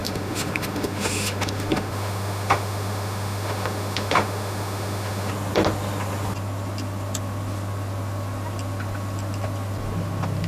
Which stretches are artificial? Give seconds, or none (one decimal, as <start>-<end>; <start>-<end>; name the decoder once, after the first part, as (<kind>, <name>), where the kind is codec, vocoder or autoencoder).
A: 0.0-5.3 (autoencoder, DAC-VAE)